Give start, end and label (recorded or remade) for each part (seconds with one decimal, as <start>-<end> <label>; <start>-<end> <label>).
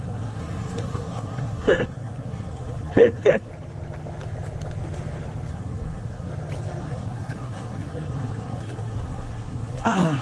0.0-3.5 remade; 3.5-5.5 recorded; 5.5-6.3 remade; 6.3-6.8 recorded; 6.8-10.2 remade